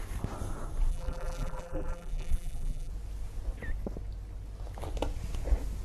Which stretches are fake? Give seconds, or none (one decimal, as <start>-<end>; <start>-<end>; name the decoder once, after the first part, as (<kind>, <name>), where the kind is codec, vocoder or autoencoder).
0.9-2.9 (vocoder, BigVGAN v2)